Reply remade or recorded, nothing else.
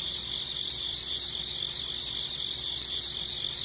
recorded